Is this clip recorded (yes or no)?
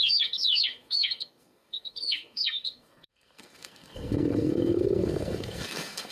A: no